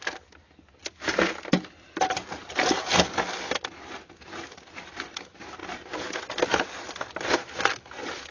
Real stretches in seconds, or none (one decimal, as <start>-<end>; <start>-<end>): 0.0-8.3

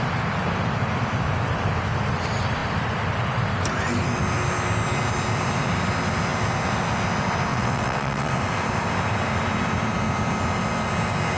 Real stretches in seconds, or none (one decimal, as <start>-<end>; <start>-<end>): 0.0-7.5; 8.3-11.4

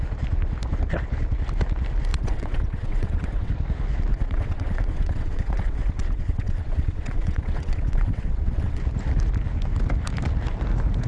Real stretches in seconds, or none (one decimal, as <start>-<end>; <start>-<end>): 0.0-2.1; 3.5-4.1; 8.8-11.1

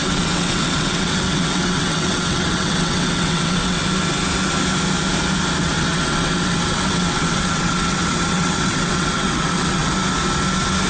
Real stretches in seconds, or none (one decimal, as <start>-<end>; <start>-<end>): 3.8-5.6; 9.8-10.9

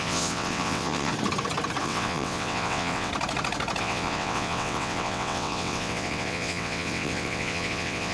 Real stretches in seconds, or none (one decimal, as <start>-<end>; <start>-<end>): 1.1-1.8; 3.1-3.8

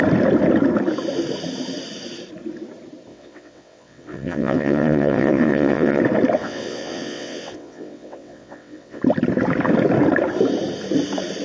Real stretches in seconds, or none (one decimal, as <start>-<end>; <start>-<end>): 0.0-3.1; 6.0-6.4; 9.0-11.4

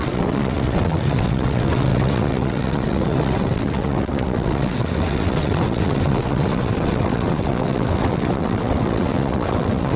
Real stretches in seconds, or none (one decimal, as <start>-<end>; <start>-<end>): none

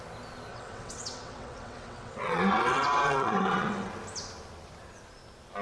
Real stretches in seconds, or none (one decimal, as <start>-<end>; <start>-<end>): 0.0-0.5; 3.9-5.6